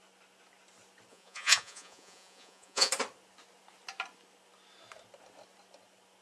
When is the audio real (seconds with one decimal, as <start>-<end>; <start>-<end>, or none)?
0.0-1.1; 2.9-6.2